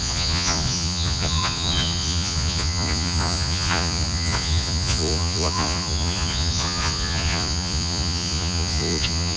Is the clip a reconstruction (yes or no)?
yes